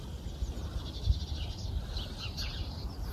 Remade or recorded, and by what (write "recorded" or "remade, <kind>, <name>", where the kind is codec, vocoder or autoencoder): recorded